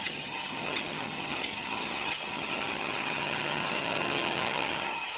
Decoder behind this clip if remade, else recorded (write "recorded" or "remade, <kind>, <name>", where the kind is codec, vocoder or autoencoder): remade, vocoder, HiFi-GAN